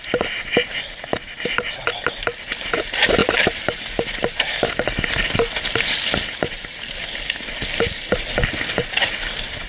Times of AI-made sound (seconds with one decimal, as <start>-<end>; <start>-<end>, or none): 3.2-4.7